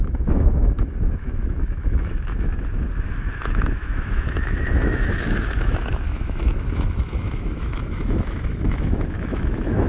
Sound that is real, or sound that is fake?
fake